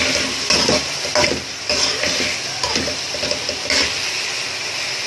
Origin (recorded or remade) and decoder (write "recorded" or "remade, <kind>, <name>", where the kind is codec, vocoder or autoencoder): recorded